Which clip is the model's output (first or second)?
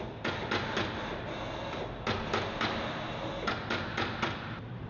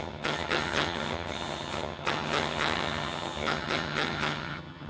second